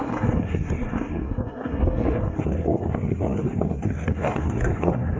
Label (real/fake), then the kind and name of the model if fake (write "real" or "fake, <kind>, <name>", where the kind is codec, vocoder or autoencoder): fake, codec, SNAC